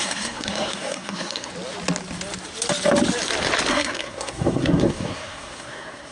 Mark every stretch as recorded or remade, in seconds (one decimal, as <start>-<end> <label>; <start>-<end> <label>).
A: 0.0-1.5 remade; 1.5-3.7 recorded; 3.7-6.1 remade